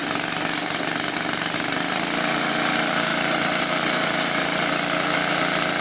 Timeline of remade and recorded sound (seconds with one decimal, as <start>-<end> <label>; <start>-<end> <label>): 0.0-3.1 recorded; 3.1-4.7 remade; 4.7-5.8 recorded